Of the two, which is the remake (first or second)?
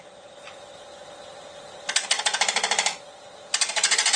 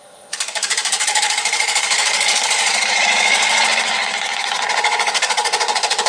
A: second